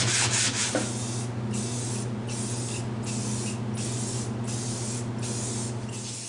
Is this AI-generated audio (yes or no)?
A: yes